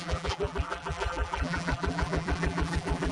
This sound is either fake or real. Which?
fake